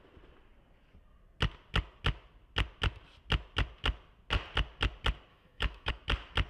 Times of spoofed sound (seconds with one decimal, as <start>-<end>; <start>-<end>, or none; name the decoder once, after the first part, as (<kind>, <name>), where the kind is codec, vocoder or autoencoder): 5.3-5.9 (autoencoder, DAC-VAE)